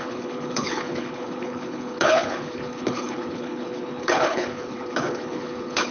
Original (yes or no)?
no